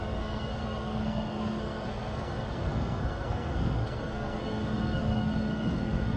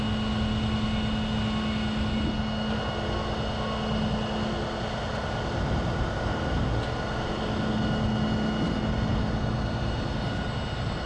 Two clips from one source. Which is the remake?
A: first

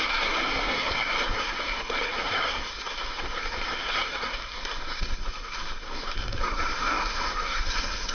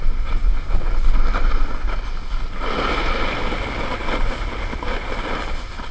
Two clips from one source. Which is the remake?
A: first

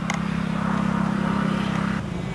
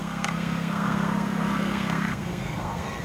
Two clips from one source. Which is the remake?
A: second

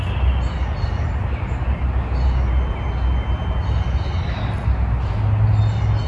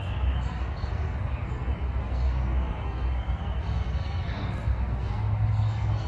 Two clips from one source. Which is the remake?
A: second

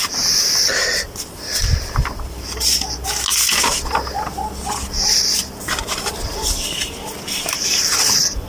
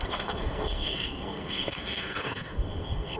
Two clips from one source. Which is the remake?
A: second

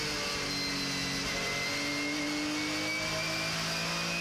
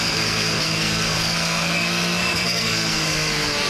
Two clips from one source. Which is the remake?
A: second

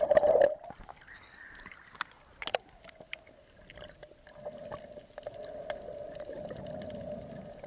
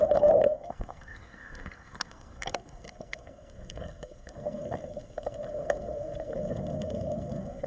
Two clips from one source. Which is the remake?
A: second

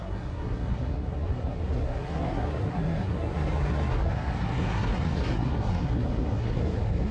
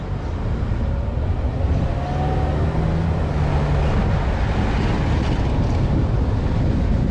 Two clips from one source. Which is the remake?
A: first